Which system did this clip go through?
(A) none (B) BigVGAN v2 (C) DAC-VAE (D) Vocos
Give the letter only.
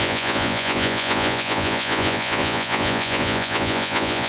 D